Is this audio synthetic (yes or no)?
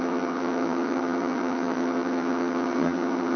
yes